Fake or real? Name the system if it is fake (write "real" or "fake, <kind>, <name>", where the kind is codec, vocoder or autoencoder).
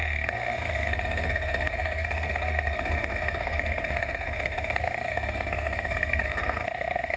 fake, codec, SNAC